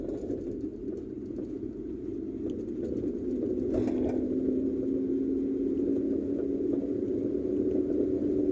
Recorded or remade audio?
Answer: recorded